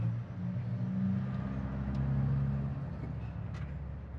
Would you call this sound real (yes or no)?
yes